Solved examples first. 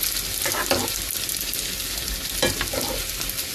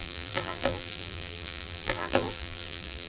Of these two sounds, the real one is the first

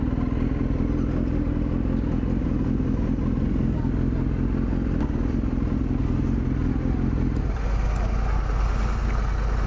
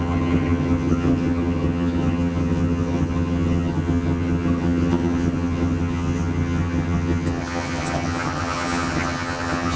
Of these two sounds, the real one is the first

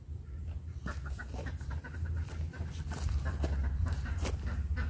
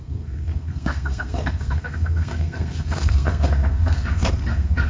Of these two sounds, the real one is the first